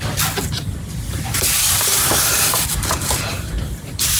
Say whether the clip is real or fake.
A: fake